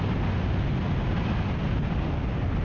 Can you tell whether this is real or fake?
real